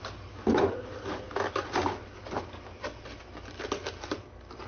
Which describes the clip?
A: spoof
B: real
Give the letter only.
B